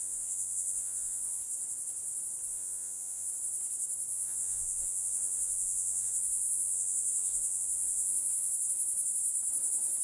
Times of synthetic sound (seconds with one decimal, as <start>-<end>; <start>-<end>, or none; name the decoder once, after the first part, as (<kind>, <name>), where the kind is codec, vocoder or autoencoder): 0.0-1.4 (vocoder, Vocos); 2.5-3.3; 4.1-8.5